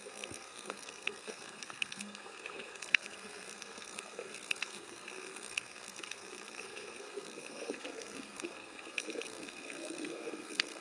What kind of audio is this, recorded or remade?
remade